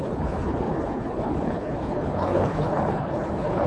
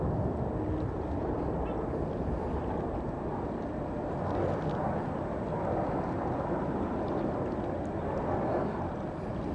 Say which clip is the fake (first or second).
first